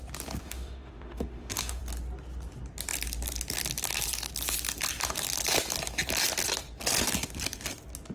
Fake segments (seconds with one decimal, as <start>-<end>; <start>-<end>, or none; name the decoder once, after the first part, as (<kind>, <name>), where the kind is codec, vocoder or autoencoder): 0.4-1.8 (autoencoder, DAC-VAE)